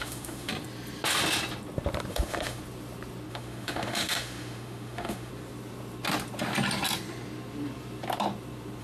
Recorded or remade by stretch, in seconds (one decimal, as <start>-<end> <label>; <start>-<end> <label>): 0.0-0.5 remade; 0.5-2.1 recorded; 2.1-2.6 remade; 2.6-3.3 recorded; 3.3-5.3 remade; 5.3-8.8 recorded